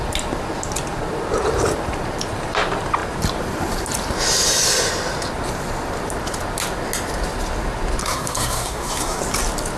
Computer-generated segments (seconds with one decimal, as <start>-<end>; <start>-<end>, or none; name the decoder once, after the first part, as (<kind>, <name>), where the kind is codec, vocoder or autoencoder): 8.0-9.2 (codec, SNAC)